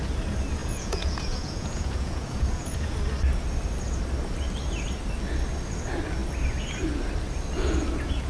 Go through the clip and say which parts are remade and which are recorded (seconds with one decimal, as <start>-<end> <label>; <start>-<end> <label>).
0.0-0.6 recorded; 0.6-2.9 remade; 2.9-8.3 recorded